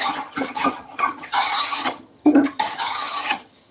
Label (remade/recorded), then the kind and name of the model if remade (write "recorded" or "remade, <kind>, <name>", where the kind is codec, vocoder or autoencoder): remade, vocoder, HiFi-GAN